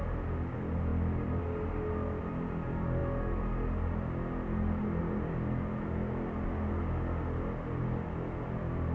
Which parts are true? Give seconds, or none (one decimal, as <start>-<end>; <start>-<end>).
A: 0.0-8.9